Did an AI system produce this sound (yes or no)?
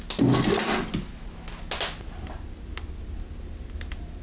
no